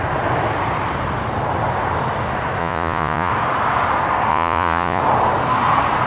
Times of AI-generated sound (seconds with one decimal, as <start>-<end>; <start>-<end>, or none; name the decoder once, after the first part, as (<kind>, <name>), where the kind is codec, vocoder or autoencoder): 2.6-3.3 (vocoder, Vocos); 4.3-5.0